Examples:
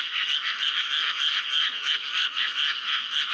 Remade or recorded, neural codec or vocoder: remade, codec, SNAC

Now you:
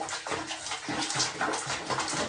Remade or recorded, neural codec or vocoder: recorded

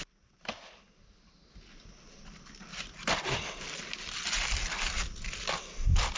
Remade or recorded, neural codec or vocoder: recorded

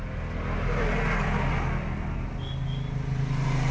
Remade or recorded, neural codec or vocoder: recorded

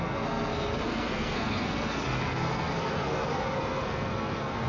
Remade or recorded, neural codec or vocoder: remade, codec, SNAC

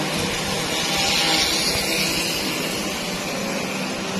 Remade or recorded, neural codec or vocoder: recorded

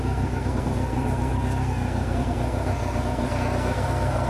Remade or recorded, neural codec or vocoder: remade, codec, SNAC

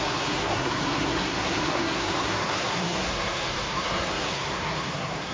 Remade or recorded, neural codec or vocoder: remade, codec, SNAC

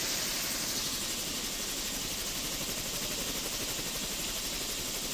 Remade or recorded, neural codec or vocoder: recorded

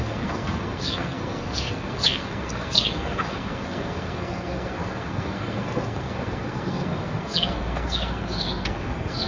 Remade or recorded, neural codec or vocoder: remade, codec, SNAC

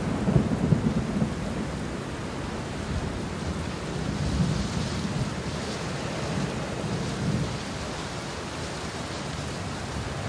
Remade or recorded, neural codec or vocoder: recorded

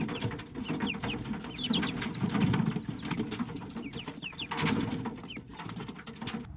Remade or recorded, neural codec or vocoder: recorded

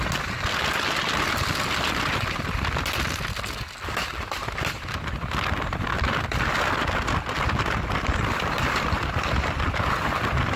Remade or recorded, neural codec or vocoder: recorded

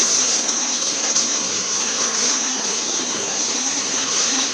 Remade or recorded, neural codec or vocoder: remade, codec, SNAC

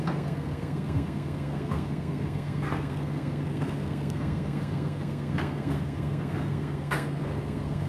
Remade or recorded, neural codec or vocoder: remade, codec, SNAC